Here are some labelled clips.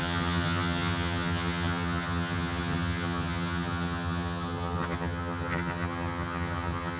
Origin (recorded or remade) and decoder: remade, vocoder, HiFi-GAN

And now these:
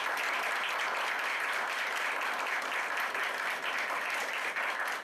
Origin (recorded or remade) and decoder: recorded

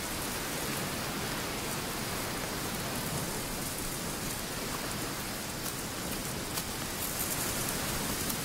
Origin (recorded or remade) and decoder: recorded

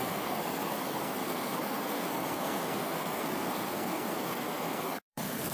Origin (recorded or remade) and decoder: remade, codec, SNAC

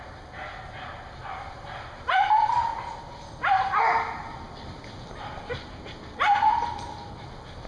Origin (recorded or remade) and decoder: recorded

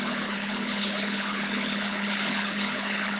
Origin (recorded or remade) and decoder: remade, codec, HILCodec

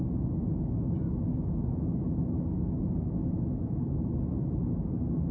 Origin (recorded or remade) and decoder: remade, autoencoder, DAC-VAE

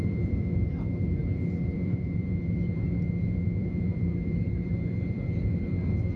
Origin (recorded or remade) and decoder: remade, vocoder, BigVGAN v2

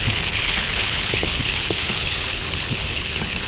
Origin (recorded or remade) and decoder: remade, codec, HILCodec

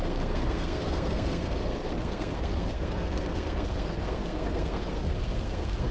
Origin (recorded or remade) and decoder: remade, codec, SNAC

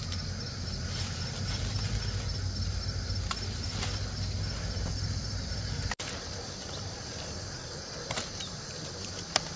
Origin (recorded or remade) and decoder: recorded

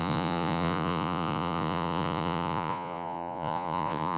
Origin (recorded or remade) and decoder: remade, vocoder, Vocos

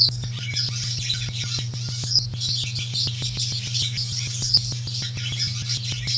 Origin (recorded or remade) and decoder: recorded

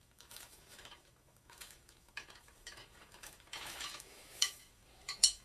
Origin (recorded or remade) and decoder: remade, autoencoder, DAC-VAE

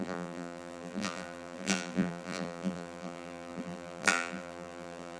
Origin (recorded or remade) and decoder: remade, vocoder, BigVGAN v2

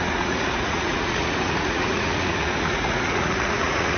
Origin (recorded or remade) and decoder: remade, vocoder, Vocos